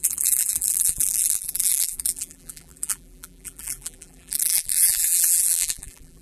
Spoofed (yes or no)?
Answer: yes